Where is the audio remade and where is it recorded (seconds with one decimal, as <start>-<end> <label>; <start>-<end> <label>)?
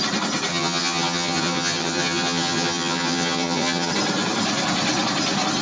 0.0-0.5 recorded; 0.5-3.9 remade; 3.9-5.6 recorded